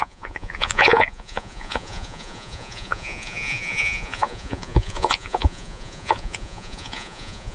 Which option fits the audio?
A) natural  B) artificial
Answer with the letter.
B